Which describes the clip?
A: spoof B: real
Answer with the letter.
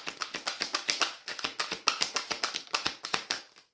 B